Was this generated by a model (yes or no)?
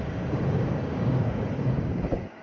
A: yes